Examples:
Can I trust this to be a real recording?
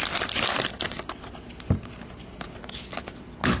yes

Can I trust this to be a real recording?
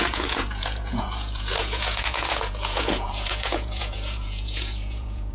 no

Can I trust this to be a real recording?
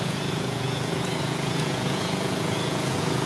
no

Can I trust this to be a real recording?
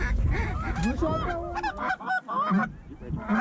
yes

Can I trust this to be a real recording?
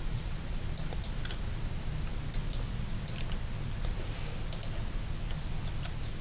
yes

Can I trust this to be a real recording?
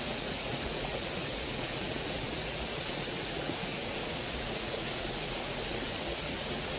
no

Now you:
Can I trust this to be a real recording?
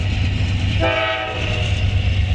yes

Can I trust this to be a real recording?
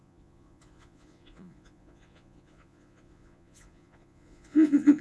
no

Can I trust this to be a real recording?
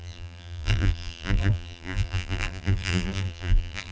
no